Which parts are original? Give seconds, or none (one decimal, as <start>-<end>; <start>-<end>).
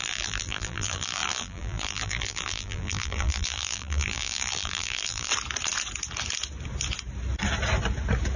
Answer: 5.3-8.4